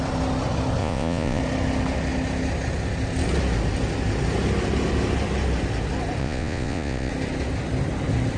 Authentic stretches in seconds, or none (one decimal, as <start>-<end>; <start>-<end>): 0.0-0.8; 1.4-6.2; 7.1-8.4